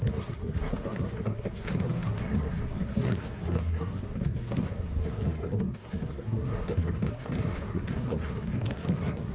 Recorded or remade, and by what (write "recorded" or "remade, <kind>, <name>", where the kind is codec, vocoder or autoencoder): remade, codec, SNAC